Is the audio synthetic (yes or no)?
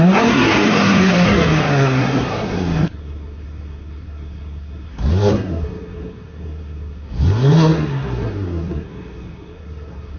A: yes